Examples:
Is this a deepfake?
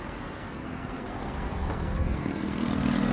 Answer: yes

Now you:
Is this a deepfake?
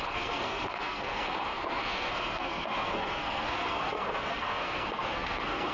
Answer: yes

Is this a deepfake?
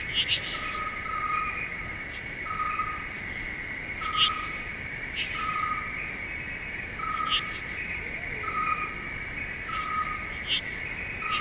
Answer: no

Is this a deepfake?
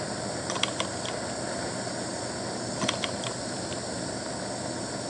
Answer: no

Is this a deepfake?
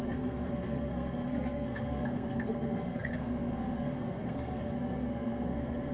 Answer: yes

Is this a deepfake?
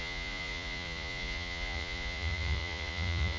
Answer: yes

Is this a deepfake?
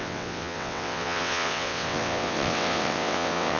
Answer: yes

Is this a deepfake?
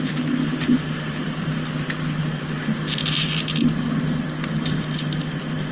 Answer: no